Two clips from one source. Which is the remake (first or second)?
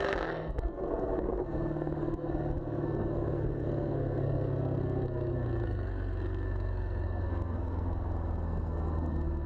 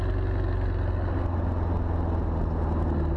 first